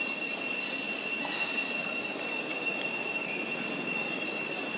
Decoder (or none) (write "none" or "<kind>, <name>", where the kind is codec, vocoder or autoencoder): none